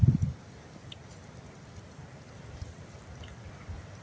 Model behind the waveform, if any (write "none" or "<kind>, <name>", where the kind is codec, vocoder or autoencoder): none